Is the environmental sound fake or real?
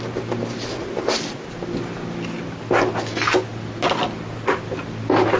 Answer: real